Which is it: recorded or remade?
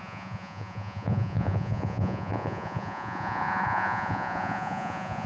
remade